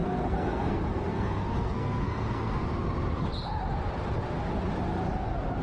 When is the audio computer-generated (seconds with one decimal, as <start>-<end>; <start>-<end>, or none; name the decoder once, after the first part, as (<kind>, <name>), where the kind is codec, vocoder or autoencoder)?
0.0-2.6 (codec, SNAC)